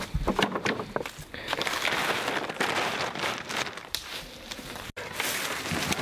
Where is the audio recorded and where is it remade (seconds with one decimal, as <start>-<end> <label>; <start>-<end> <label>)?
0.0-6.0 recorded